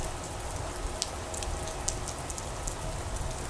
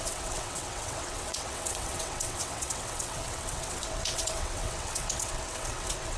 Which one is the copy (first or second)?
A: second